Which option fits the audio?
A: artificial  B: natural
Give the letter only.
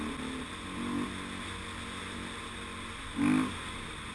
B